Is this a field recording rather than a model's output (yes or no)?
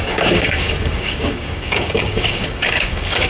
no